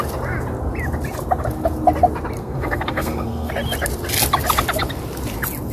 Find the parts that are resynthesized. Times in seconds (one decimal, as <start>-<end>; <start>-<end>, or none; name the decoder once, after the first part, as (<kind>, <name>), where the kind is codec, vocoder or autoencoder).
2.4-3.5 (codec, SNAC)